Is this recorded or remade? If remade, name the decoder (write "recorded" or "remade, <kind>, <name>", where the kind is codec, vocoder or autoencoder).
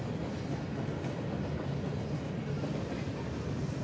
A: recorded